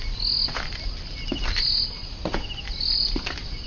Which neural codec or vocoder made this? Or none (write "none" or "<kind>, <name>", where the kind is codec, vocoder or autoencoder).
none